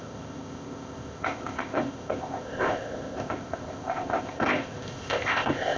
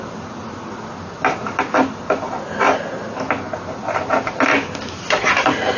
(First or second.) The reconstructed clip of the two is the first